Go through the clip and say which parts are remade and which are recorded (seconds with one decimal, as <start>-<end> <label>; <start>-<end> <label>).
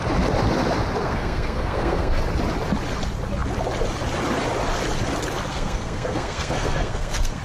0.0-1.0 recorded; 1.0-2.2 remade; 2.2-5.5 recorded; 5.5-7.4 remade